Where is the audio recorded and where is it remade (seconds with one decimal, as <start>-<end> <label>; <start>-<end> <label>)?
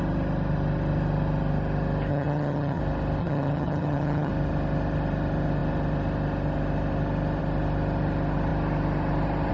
0.0-2.1 recorded; 2.1-2.8 remade; 2.8-3.2 recorded; 3.2-4.3 remade; 4.3-9.5 recorded